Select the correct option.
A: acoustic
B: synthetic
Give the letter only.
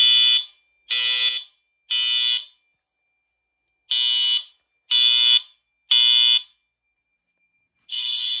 A